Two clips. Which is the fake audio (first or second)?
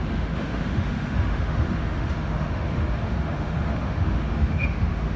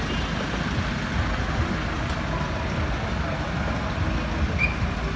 first